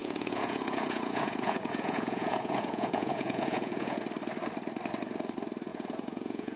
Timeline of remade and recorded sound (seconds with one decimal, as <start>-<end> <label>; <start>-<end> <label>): 0.0-4.0 remade; 4.0-5.7 recorded; 5.7-6.6 remade